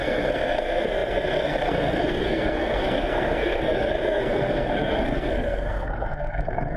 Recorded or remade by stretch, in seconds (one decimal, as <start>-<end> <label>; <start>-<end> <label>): 0.0-6.8 remade